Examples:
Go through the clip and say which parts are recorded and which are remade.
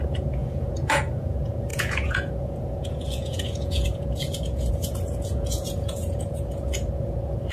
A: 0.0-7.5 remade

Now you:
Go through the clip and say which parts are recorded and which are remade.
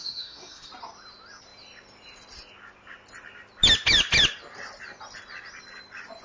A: 0.0-0.7 remade; 0.7-6.2 recorded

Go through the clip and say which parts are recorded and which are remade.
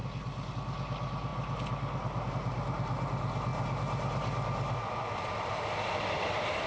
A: 0.0-6.7 recorded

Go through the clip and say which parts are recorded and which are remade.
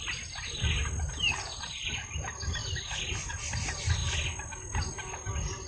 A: 0.0-5.7 recorded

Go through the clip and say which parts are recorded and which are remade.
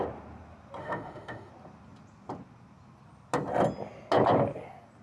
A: 0.0-0.8 recorded; 0.8-1.5 remade; 1.5-5.0 recorded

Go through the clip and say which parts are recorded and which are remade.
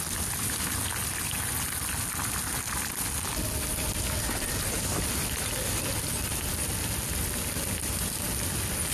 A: 0.0-8.9 recorded